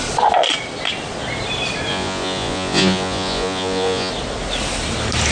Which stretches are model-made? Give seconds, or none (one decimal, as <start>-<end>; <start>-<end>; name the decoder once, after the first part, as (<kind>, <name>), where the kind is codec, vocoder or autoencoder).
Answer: 1.9-4.1 (vocoder, Vocos)